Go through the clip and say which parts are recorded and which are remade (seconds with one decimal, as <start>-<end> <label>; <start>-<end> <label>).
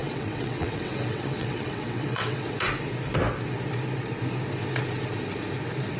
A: 0.0-2.6 remade; 2.6-6.0 recorded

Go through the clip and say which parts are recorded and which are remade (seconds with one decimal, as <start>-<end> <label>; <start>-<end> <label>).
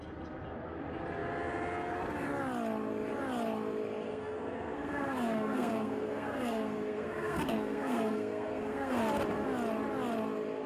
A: 0.0-4.1 recorded; 4.1-9.0 remade; 9.0-10.7 recorded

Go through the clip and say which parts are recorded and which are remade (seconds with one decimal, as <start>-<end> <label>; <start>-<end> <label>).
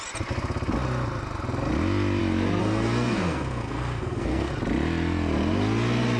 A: 0.0-2.6 recorded; 2.6-4.5 remade; 4.5-6.2 recorded